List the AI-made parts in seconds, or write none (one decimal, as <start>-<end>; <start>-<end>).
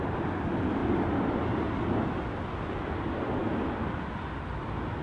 none